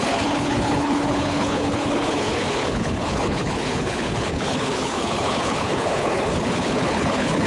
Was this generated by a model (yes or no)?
yes